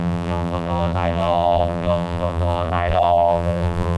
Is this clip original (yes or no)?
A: no